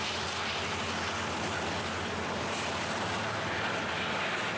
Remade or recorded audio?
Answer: recorded